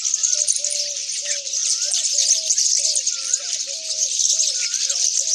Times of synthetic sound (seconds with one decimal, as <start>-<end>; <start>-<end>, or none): none